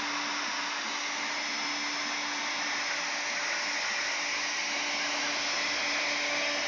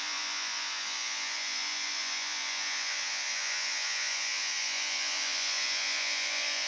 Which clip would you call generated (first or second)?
second